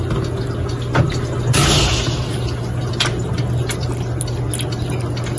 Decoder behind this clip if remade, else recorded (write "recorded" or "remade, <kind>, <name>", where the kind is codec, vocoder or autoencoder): recorded